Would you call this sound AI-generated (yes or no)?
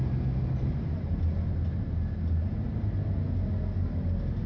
no